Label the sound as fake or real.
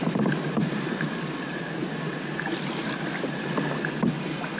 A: real